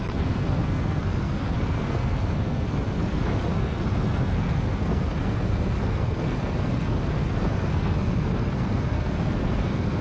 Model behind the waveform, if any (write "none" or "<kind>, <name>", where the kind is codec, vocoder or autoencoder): codec, SNAC